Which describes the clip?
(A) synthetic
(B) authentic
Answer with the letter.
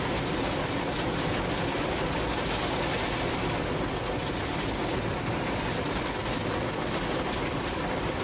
B